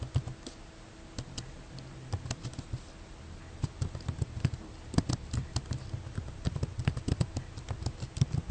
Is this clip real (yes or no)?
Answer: yes